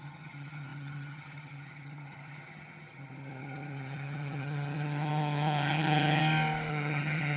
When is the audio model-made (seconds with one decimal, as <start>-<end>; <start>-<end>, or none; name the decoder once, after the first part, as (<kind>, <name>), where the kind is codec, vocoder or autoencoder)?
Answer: 0.0-6.2 (vocoder, HiFi-GAN); 6.7-7.4